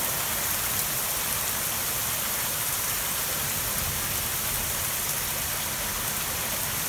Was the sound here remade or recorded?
recorded